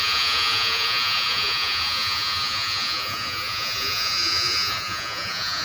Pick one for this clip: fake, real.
fake